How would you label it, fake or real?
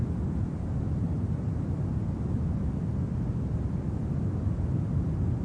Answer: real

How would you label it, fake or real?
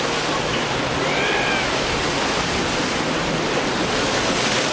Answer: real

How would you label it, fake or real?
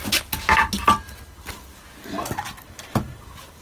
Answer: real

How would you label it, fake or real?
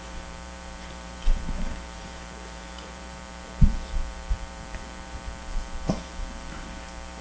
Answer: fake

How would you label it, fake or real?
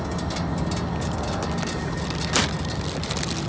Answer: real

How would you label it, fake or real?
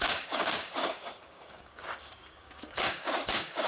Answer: fake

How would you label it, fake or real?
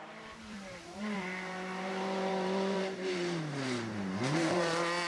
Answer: fake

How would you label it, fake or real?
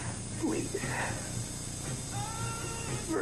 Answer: real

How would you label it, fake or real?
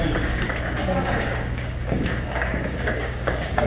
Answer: fake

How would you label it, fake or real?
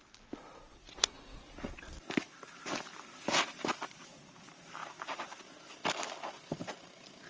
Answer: real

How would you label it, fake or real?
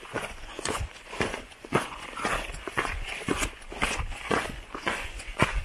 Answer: fake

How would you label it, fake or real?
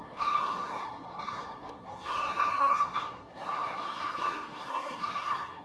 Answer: fake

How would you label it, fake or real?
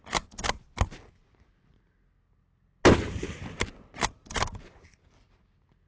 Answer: real